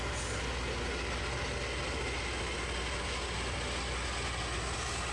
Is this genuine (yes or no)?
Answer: yes